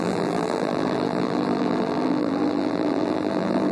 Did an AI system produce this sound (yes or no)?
yes